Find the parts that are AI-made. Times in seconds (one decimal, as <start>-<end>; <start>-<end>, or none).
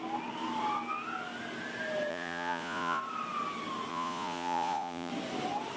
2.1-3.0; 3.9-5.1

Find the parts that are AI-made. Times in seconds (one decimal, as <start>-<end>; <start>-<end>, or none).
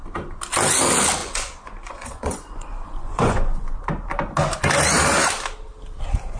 1.2-3.8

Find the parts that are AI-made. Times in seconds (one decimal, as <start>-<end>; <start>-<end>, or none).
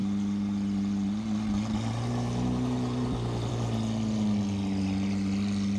none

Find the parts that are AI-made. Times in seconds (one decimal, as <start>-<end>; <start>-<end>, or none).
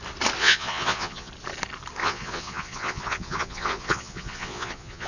0.4-1.3; 2.0-5.1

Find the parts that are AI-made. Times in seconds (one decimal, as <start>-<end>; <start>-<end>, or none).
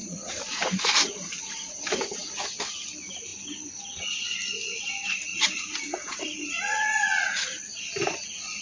0.0-2.4; 5.3-7.6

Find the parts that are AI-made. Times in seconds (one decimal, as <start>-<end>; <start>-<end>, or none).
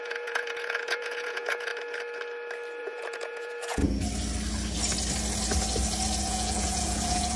0.0-1.7; 2.8-3.8; 6.2-7.4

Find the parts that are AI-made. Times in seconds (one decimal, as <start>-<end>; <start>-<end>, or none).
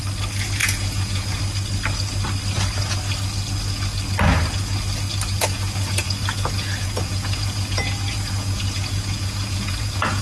0.6-1.4; 5.3-10.2